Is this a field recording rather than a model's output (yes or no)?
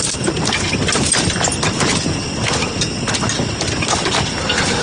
yes